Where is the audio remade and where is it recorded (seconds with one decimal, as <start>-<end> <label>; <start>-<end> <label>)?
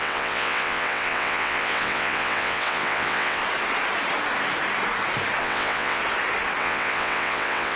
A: 0.0-3.4 remade; 3.4-5.4 recorded; 5.4-6.0 remade; 6.0-6.6 recorded; 6.6-7.8 remade